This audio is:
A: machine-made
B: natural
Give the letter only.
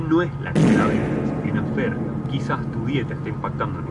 B